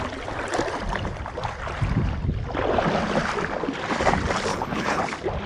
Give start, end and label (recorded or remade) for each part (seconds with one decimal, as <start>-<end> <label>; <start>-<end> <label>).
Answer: 0.0-4.5 recorded; 4.5-5.0 remade; 5.0-5.5 recorded